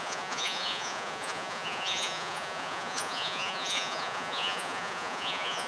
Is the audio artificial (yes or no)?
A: yes